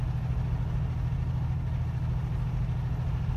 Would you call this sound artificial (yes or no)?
no